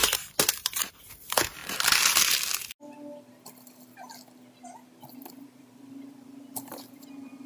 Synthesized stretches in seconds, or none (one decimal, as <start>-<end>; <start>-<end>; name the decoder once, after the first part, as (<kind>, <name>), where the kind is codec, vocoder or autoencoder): 0.5-1.6 (vocoder, BigVGAN v2); 5.3-7.5